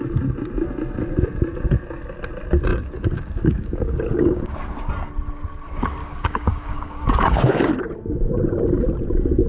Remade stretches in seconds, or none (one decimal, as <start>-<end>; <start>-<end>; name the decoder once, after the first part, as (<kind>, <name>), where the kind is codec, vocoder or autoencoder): 2.7-4.9 (codec, DAC); 6.0-7.7